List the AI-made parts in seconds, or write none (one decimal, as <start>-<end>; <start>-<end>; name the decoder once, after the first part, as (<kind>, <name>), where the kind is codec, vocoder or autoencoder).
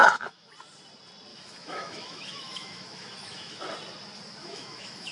0.0-0.5 (autoencoder, DAC-VAE); 1.3-3.6; 4.4-5.1